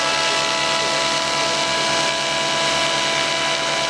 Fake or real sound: real